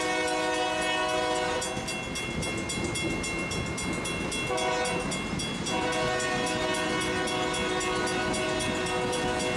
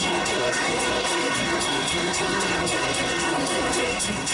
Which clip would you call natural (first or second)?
first